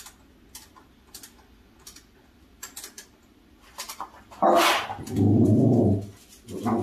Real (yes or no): yes